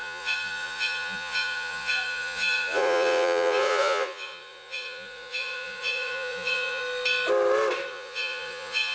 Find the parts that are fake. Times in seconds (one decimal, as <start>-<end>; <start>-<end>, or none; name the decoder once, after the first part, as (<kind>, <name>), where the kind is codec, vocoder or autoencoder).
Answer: 0.0-6.8 (vocoder, Vocos); 7.9-8.9

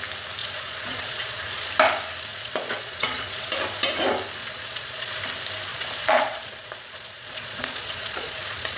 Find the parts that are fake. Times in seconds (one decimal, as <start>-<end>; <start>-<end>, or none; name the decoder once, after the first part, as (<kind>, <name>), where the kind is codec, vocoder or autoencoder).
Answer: 0.4-1.7 (vocoder, Vocos); 2.3-3.5; 4.4-5.2; 5.7-8.8